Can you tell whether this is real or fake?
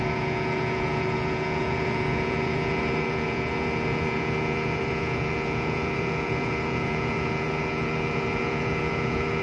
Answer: fake